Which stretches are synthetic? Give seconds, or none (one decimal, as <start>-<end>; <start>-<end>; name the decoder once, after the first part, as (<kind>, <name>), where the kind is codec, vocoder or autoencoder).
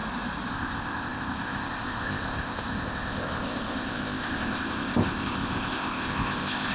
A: 0.5-6.7 (codec, ZipCodec)